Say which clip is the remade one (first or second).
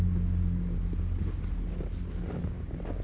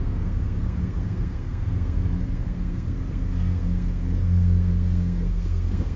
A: second